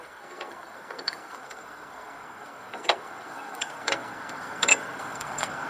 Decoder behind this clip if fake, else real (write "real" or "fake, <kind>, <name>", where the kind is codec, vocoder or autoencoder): fake, codec, SNAC